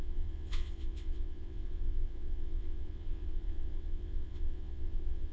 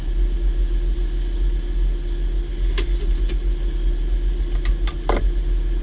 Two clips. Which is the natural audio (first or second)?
second